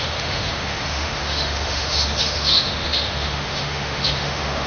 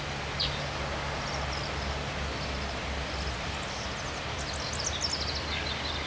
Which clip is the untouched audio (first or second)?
second